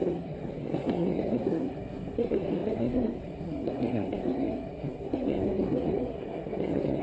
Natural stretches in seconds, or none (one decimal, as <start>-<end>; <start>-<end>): none